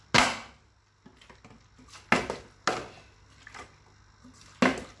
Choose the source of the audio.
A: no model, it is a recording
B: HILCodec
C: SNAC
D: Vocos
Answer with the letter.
A